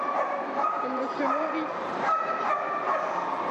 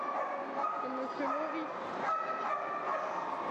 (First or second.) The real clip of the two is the second